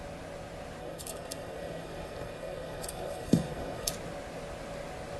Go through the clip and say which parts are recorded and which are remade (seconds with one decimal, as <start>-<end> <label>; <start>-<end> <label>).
0.0-0.8 recorded; 0.8-3.9 remade; 3.9-5.2 recorded